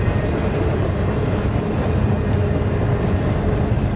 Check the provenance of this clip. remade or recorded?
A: recorded